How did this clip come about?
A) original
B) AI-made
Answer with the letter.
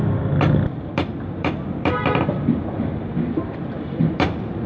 B